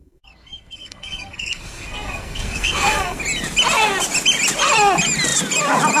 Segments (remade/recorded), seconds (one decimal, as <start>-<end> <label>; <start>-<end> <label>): 0.0-3.2 remade; 3.2-6.0 recorded